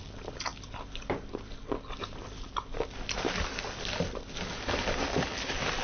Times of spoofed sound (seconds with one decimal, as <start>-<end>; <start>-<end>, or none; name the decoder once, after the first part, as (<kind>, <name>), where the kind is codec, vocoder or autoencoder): none